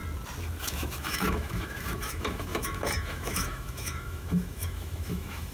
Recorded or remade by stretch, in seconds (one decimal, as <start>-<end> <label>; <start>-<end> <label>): 0.0-0.6 recorded; 0.6-5.5 remade